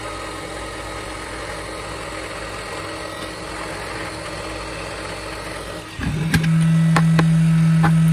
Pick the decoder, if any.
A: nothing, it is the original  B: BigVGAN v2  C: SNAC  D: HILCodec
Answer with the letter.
A